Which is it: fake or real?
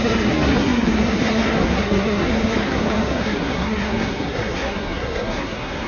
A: fake